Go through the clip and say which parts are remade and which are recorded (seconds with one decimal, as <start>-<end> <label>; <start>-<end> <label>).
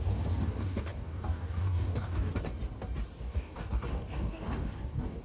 0.0-2.3 remade; 2.3-3.2 recorded; 3.2-5.2 remade